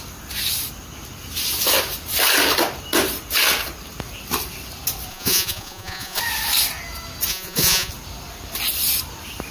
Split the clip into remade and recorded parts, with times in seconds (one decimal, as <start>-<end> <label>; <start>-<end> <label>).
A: 0.0-5.1 recorded; 5.1-6.2 remade; 6.2-7.3 recorded; 7.3-7.9 remade; 7.9-9.5 recorded